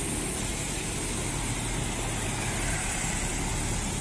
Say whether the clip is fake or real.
real